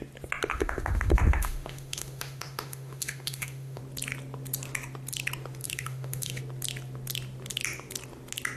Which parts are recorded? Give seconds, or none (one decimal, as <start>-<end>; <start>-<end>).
0.0-0.5; 3.8-5.6; 6.4-8.6